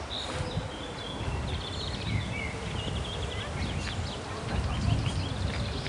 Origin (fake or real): real